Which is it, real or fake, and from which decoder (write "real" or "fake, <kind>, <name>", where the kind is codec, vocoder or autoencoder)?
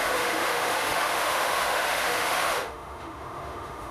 fake, autoencoder, DAC-VAE